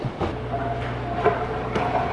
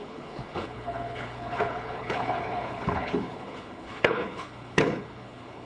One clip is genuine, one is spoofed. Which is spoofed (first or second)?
second